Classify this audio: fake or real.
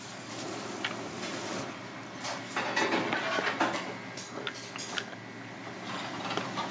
real